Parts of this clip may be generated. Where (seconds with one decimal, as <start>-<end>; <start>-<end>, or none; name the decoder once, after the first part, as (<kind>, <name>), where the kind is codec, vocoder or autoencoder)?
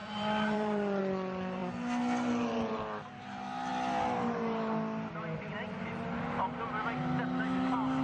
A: 0.0-1.0 (vocoder, BigVGAN v2)